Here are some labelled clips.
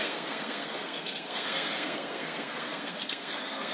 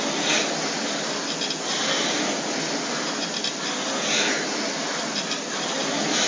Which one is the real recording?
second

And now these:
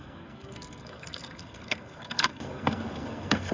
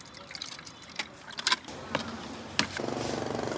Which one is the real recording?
second